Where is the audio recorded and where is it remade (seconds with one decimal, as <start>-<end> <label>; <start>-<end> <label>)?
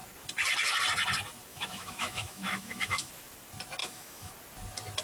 0.0-1.5 recorded; 1.5-3.1 remade; 3.1-3.8 recorded; 3.8-4.3 remade; 4.3-5.0 recorded